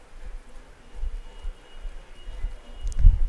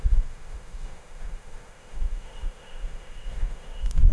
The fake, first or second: second